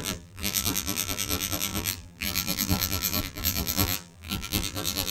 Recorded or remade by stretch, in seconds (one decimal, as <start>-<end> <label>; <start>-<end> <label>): 0.0-5.1 remade